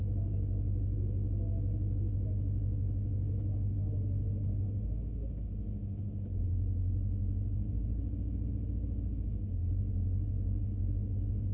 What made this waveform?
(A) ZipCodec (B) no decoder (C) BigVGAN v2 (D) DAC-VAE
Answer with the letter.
B